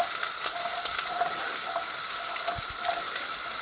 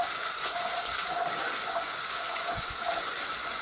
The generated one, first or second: second